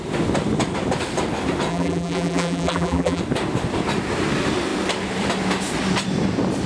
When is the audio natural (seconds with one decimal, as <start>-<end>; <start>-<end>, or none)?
0.0-1.7; 3.2-6.7